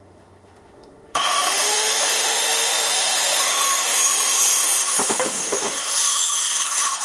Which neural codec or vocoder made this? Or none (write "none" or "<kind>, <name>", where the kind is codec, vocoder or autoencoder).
autoencoder, DAC-VAE